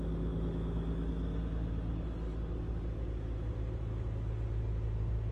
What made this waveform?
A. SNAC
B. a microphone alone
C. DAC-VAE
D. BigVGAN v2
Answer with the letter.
B